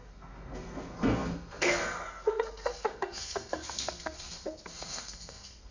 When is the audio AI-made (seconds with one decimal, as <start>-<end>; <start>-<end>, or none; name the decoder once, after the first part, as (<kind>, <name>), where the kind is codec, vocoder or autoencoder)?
0.0-5.7 (codec, SNAC)